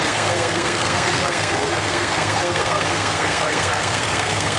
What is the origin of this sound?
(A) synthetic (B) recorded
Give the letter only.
A